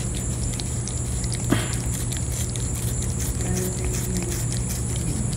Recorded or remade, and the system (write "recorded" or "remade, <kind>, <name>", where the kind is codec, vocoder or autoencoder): recorded